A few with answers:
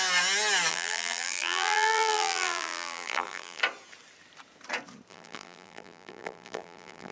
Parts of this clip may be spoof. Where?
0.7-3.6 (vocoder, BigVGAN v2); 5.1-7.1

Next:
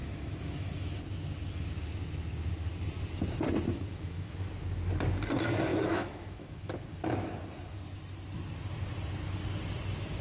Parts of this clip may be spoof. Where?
0.0-1.0 (autoencoder, DAC-VAE); 3.7-4.3; 5.7-6.7

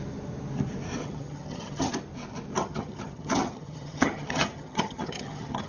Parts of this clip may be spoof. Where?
1.0-1.9 (vocoder, HiFi-GAN); 2.6-5.7

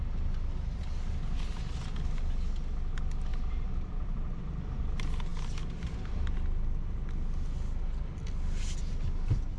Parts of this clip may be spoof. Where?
3.3-4.4 (vocoder, BigVGAN v2)

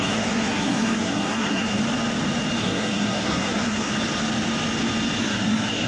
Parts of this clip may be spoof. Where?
0.0-1.8 (codec, SNAC); 2.6-3.9; 5.2-5.9

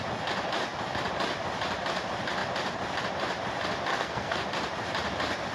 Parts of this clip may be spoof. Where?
3.9-4.4 (codec, SNAC)

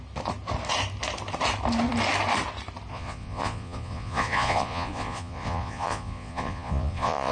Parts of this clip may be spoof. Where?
2.9-7.3 (vocoder, Vocos)